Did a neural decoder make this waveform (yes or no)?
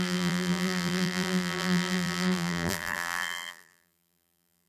yes